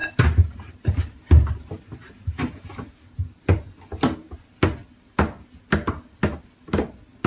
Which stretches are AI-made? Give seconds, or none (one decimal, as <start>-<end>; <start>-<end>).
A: 0.0-1.2